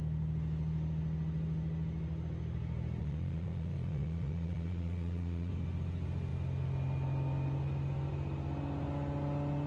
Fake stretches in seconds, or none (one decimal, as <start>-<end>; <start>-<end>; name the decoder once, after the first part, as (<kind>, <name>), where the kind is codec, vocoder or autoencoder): 3.0-5.5 (vocoder, Vocos)